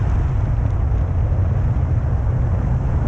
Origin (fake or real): real